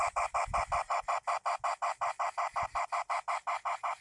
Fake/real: real